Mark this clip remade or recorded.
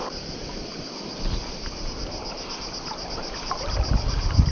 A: recorded